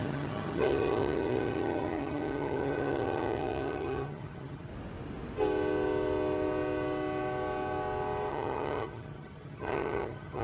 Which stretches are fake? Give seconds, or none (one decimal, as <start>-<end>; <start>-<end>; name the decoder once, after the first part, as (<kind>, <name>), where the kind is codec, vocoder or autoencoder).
0.0-4.7 (vocoder, HiFi-GAN); 8.3-10.4